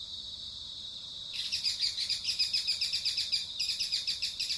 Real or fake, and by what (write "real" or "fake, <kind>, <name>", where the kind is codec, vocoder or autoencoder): fake, vocoder, BigVGAN v2